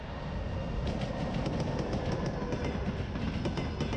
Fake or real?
real